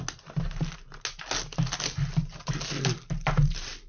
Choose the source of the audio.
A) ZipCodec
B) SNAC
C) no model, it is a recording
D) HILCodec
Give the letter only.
C